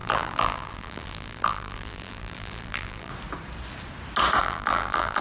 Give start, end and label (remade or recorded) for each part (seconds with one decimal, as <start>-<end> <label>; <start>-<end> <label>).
0.0-3.1 remade; 3.1-4.4 recorded; 4.4-5.2 remade